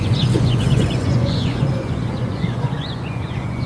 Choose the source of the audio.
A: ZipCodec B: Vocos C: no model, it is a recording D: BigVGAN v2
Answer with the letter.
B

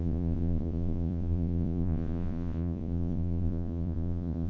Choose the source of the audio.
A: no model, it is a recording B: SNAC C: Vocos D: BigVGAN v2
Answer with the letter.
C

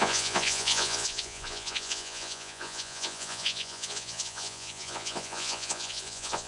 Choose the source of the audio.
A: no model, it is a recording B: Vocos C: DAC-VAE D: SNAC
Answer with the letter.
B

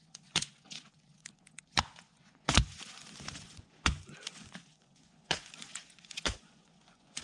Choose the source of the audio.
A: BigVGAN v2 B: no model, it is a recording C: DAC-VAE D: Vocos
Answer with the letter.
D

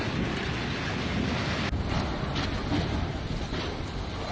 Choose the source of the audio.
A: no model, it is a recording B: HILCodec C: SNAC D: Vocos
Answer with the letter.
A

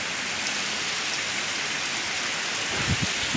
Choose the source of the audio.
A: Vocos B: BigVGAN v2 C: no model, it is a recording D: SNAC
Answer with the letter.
C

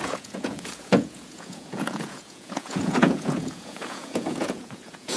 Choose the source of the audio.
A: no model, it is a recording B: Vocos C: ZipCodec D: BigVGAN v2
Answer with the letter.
B